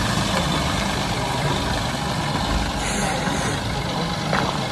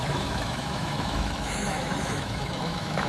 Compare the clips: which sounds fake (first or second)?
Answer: second